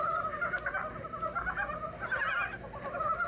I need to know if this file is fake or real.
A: real